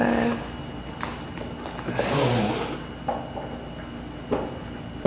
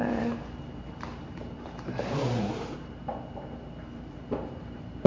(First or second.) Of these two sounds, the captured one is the first